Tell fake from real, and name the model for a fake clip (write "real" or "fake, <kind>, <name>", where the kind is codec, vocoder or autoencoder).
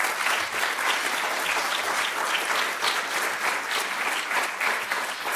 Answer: real